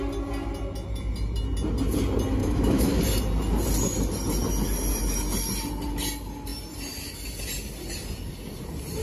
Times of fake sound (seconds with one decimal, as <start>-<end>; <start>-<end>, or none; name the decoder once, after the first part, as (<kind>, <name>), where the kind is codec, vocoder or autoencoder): 2.4-3.0 (autoencoder, DAC-VAE)